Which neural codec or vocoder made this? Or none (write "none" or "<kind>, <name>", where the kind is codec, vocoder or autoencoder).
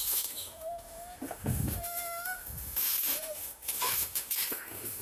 autoencoder, DAC-VAE